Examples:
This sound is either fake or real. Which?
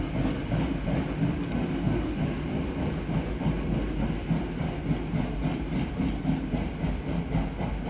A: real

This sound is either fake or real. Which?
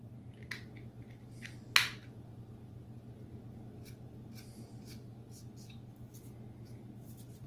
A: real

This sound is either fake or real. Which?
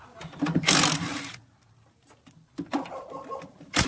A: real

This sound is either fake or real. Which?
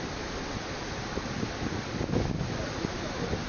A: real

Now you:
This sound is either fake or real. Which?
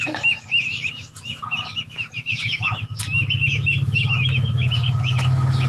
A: fake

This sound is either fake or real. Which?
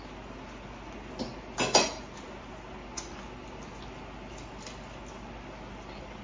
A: real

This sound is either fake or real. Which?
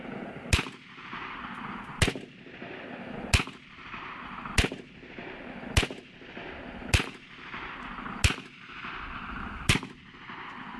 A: real